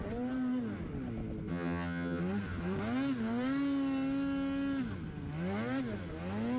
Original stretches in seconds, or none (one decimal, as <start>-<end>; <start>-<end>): 0.0-1.5; 2.2-6.6